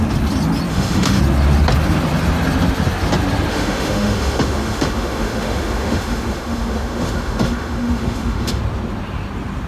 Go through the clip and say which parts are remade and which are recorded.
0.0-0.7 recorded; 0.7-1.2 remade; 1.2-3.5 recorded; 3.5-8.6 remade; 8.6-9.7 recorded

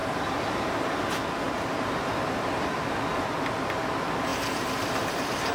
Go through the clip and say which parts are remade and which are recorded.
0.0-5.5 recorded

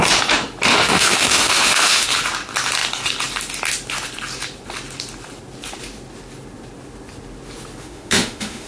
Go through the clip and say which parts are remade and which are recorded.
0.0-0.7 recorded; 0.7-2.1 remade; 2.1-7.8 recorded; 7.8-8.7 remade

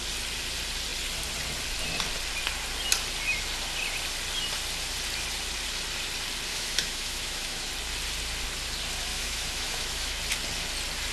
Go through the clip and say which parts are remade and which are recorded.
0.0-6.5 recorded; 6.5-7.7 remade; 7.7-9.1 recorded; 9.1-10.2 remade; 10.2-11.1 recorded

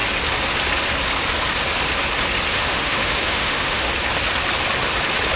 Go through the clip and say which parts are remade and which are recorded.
0.0-2.5 recorded; 2.5-3.9 remade; 3.9-5.4 recorded

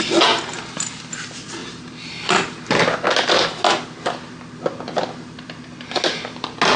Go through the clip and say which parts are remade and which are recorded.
0.0-6.8 recorded

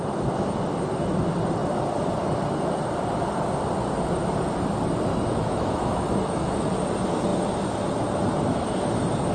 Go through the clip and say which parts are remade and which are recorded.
0.0-5.1 recorded; 5.1-6.7 remade; 6.7-9.3 recorded

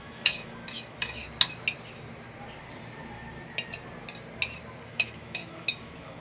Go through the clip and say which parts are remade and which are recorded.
0.0-1.2 remade; 1.2-4.9 recorded; 4.9-6.2 remade